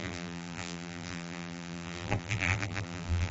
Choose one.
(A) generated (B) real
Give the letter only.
A